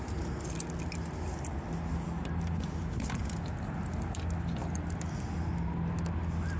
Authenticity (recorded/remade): recorded